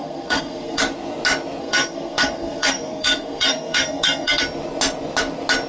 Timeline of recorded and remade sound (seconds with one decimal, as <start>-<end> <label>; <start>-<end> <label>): 0.0-0.8 remade; 0.8-1.6 recorded; 1.6-4.4 remade; 4.4-5.7 recorded